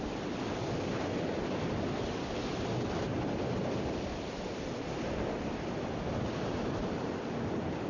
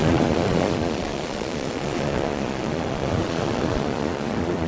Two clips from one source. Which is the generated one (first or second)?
second